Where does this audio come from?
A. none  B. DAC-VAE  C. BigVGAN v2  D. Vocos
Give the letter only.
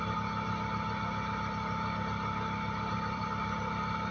C